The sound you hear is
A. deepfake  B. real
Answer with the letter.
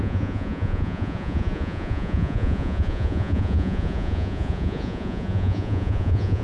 A